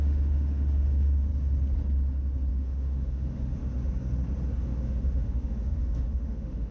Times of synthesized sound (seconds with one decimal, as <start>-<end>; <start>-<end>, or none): 0.0-1.3; 2.5-3.6; 4.6-6.7